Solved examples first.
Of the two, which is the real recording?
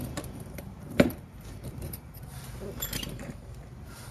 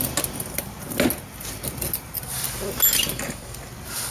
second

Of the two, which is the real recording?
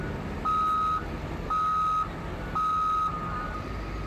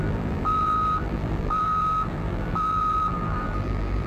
first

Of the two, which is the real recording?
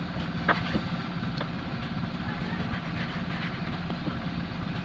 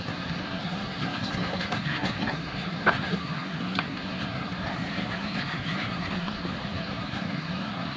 first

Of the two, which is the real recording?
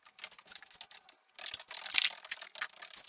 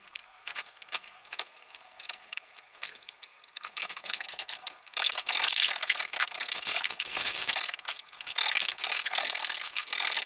first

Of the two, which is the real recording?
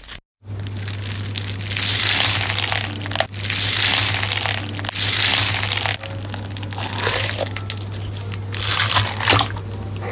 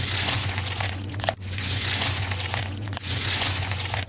first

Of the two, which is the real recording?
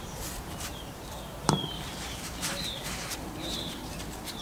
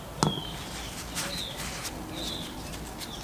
second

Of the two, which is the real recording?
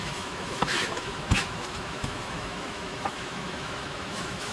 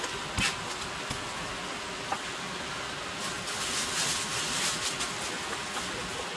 second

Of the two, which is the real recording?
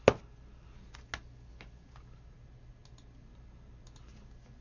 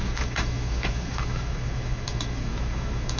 first